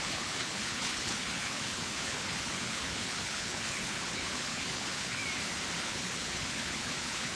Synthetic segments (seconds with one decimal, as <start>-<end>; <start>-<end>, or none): 0.0-5.2; 5.8-7.4